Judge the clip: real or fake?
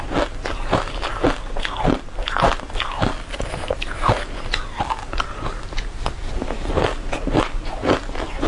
real